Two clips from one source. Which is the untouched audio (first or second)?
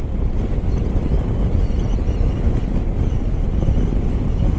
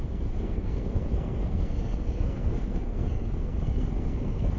first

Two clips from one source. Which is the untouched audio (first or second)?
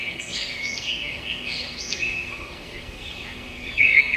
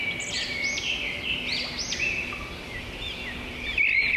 second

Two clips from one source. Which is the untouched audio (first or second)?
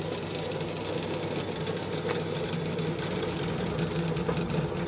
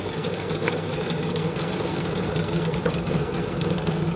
first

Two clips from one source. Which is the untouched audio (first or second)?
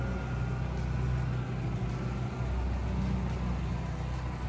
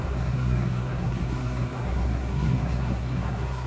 first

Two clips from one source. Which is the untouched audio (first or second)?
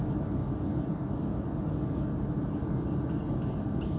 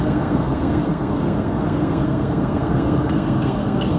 first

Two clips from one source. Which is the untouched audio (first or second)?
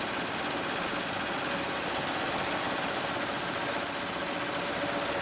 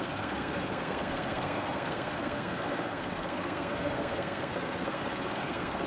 first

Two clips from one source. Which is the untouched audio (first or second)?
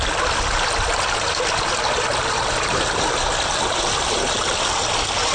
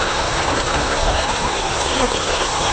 first